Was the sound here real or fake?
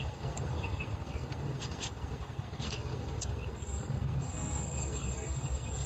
fake